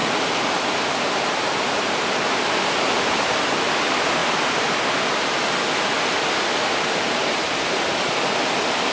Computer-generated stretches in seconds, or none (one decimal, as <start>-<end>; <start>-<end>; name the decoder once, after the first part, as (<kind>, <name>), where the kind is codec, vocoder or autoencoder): none